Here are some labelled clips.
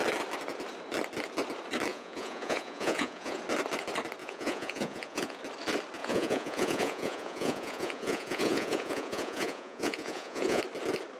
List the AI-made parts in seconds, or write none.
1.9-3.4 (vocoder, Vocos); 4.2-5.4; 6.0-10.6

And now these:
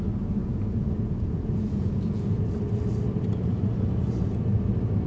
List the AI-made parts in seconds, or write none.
0.4-2.5 (vocoder, Vocos)

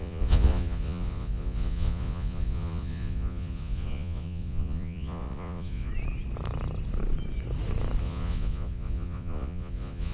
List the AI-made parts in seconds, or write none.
0.0-5.9 (vocoder, Vocos); 8.0-10.1

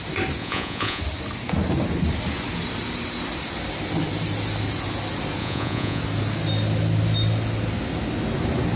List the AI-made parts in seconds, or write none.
0.4-1.0 (vocoder, Vocos); 5.4-6.0

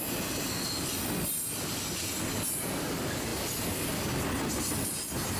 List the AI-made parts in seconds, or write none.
none

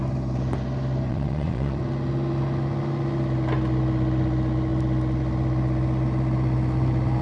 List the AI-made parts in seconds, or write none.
1.1-1.8 (vocoder, Vocos)

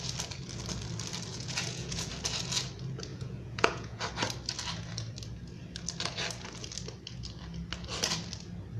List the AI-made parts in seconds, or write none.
1.3-2.1 (vocoder, Vocos); 3.1-4.0

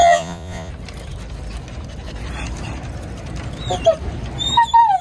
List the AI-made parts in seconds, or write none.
0.0-0.7 (vocoder, Vocos)